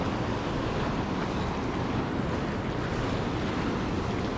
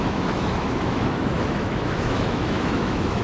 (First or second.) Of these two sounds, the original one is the first